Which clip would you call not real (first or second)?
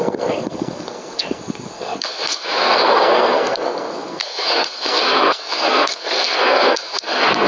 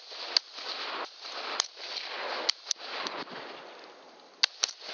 first